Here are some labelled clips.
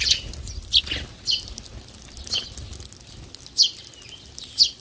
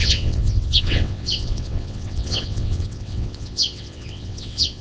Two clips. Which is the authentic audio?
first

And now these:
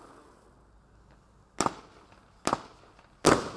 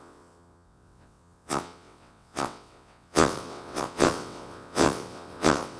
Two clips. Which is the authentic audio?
first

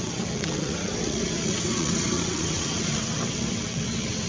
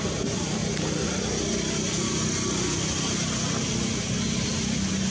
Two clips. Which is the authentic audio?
second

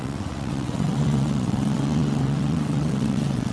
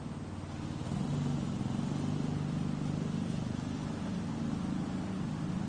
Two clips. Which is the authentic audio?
second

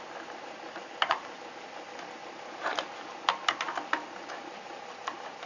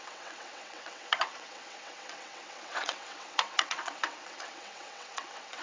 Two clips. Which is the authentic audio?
first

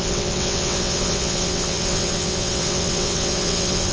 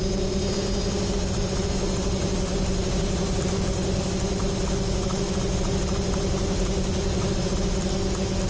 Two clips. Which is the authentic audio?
second